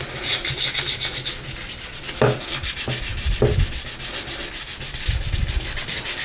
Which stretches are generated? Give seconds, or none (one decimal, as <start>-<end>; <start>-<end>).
none